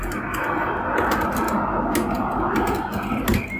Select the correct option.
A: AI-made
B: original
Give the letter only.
B